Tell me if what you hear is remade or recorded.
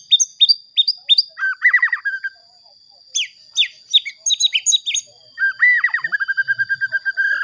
recorded